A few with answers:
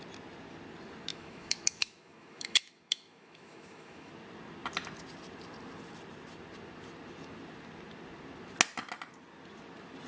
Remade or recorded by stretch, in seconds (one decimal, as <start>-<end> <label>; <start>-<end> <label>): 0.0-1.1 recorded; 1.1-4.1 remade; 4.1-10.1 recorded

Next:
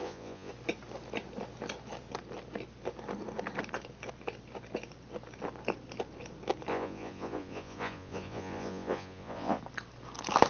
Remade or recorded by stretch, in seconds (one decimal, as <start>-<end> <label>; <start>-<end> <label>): 0.0-0.5 remade; 0.5-6.7 recorded; 6.7-9.6 remade; 9.6-10.5 recorded

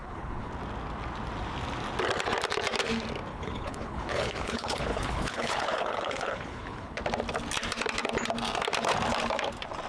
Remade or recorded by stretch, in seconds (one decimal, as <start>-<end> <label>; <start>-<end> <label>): 0.0-0.5 remade; 0.5-3.3 recorded; 3.3-7.0 remade; 7.0-9.9 recorded

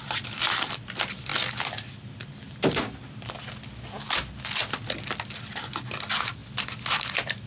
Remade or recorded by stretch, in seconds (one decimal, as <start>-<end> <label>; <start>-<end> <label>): 0.0-7.5 recorded